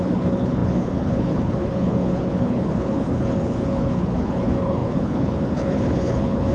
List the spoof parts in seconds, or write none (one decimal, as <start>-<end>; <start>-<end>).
0.0-6.5